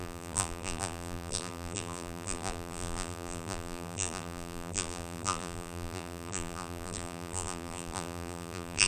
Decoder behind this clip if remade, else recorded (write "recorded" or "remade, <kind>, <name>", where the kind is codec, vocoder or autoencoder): remade, vocoder, BigVGAN v2